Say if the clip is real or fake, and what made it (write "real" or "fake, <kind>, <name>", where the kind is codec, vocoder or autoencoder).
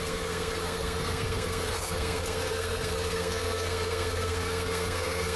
fake, codec, SNAC